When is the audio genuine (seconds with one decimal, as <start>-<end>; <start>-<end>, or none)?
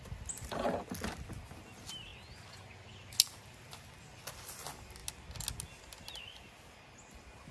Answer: 0.0-7.5